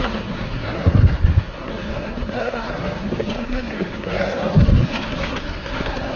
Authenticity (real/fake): fake